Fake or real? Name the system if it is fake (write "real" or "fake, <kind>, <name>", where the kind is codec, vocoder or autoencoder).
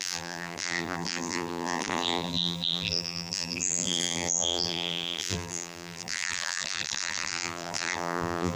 fake, vocoder, BigVGAN v2